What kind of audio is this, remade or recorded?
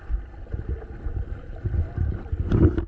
recorded